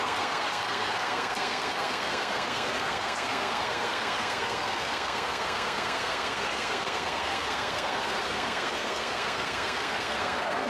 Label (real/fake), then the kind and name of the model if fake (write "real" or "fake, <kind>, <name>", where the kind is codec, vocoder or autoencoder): fake, codec, SNAC